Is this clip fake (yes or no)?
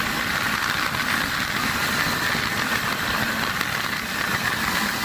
no